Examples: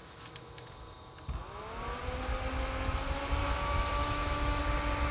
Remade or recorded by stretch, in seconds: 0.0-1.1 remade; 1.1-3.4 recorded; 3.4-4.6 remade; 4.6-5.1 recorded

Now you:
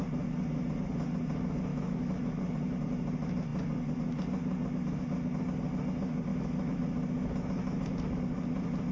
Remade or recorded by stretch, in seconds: 0.0-1.7 recorded; 1.7-2.4 remade; 2.4-6.3 recorded; 6.3-6.8 remade; 6.8-8.9 recorded

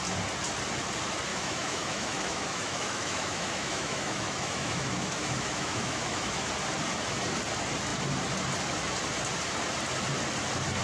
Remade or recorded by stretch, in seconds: 0.0-1.3 recorded; 1.3-6.5 remade; 6.5-10.8 recorded

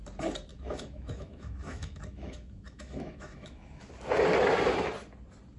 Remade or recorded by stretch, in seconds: 0.0-0.5 recorded; 0.5-3.9 remade; 3.9-5.6 recorded

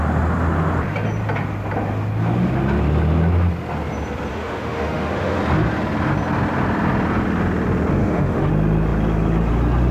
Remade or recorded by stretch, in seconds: 0.0-4.3 recorded; 4.3-5.4 remade; 5.4-8.0 recorded; 8.0-8.5 remade; 8.5-9.9 recorded